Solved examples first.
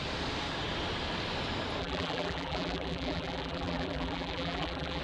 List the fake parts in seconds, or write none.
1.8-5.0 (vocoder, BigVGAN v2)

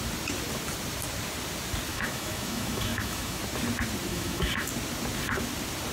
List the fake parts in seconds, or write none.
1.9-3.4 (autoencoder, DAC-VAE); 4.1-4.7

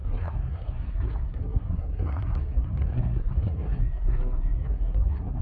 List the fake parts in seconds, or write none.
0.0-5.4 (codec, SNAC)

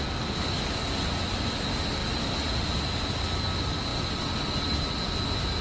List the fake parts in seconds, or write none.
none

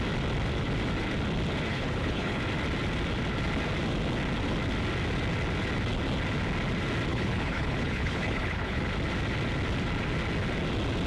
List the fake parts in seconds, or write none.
1.7-2.4 (codec, HILCodec); 7.1-8.8